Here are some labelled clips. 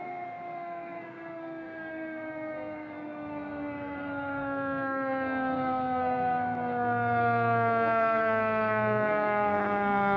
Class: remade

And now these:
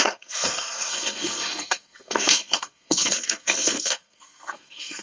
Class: remade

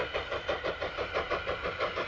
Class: recorded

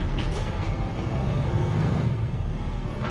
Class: remade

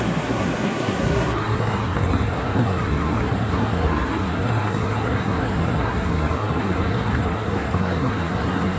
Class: remade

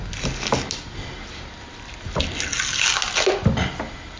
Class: recorded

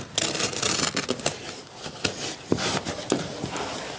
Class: recorded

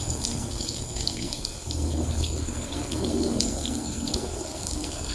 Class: remade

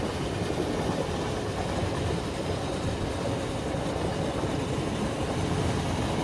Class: recorded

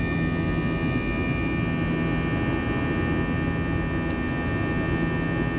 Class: recorded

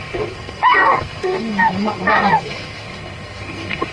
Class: remade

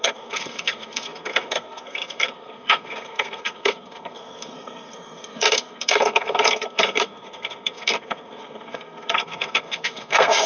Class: remade